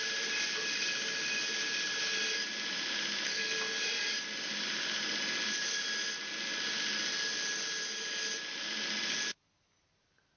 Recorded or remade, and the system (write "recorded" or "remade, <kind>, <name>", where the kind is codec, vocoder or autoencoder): recorded